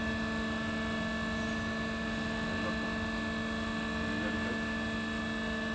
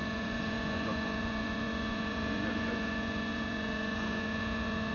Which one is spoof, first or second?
second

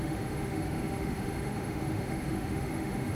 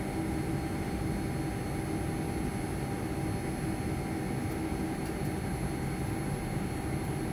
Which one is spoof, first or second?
first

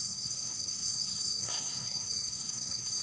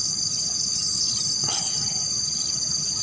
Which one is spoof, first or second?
first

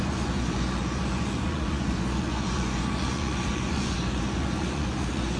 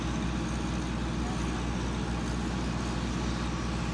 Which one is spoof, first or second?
first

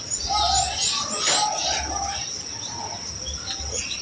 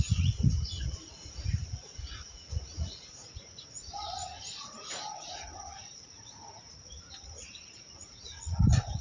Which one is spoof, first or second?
second